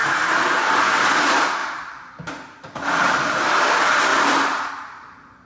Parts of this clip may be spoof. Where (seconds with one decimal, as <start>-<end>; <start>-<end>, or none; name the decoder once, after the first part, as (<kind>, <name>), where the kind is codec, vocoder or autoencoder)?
1.6-3.6 (vocoder, BigVGAN v2); 4.1-4.7